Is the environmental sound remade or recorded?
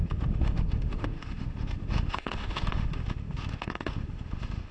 remade